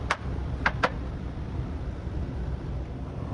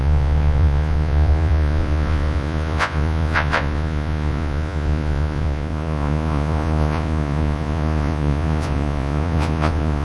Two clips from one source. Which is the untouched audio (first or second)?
first